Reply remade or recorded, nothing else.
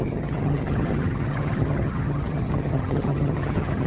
remade